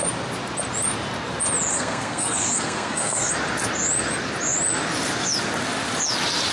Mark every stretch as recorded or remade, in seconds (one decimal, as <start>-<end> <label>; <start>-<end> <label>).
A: 0.0-1.7 recorded; 1.7-3.3 remade; 3.3-6.5 recorded